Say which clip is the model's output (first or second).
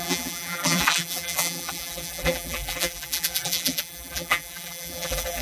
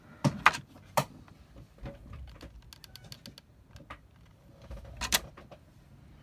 first